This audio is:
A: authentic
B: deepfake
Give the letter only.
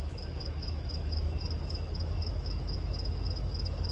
B